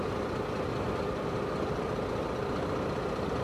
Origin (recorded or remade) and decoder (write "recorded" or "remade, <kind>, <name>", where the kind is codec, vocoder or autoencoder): recorded